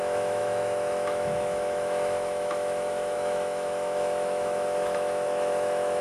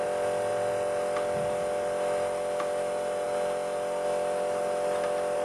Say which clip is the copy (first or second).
first